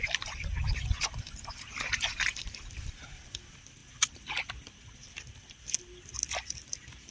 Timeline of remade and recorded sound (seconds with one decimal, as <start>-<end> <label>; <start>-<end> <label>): 0.0-7.1 recorded